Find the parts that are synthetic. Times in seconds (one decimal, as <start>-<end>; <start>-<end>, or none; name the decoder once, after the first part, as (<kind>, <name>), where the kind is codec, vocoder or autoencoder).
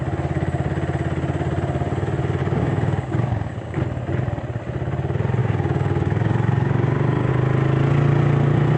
2.4-3.8 (codec, DAC); 5.4-7.3